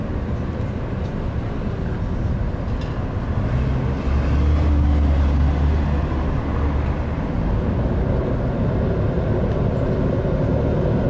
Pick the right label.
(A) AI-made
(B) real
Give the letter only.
B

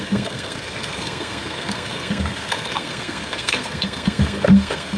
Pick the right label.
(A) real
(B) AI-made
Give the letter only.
B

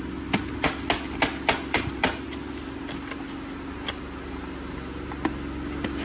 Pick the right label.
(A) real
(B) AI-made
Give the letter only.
A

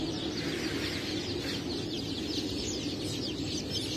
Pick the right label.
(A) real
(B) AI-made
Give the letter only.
A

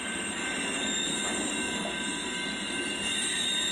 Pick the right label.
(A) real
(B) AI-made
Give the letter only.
A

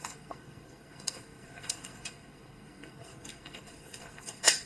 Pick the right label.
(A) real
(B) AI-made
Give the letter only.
B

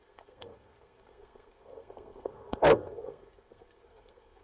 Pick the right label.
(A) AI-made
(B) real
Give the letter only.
A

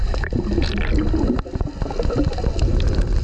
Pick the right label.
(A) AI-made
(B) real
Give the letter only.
B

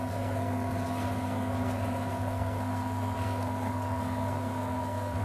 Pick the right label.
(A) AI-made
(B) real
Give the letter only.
A